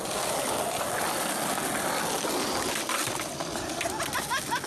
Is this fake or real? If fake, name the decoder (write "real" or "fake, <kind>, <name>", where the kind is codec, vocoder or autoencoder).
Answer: real